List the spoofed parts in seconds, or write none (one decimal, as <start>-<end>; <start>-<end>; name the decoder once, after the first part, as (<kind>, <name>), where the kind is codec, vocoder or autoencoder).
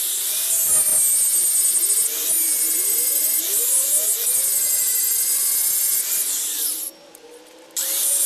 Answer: none